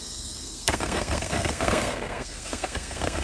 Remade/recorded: remade